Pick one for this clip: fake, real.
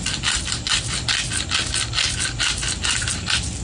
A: real